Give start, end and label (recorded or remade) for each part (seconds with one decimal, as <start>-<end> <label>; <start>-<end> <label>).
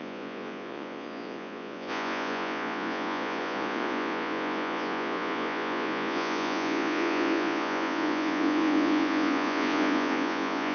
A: 0.0-10.7 remade